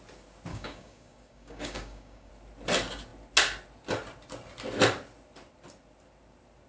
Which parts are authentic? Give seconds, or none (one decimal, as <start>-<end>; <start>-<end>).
0.0-0.5; 2.3-6.7

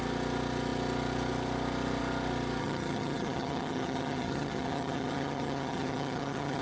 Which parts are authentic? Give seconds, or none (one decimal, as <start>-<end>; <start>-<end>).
0.0-2.6